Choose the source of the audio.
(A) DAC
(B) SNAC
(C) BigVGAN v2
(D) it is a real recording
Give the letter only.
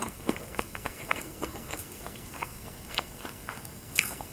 B